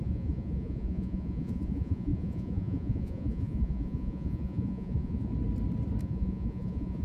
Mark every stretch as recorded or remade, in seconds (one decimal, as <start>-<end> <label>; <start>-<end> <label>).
0.0-5.3 remade; 5.3-6.0 recorded; 6.0-7.0 remade